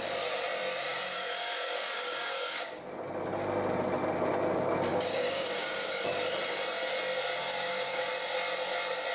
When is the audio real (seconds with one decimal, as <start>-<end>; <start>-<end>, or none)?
0.0-0.9; 2.8-4.9; 5.9-7.4; 8.1-9.1